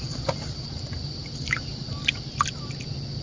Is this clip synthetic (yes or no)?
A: no